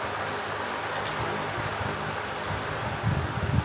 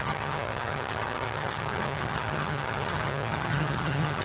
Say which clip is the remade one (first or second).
second